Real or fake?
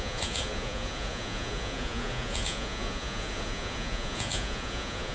fake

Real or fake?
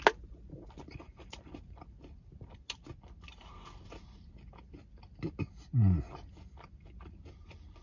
real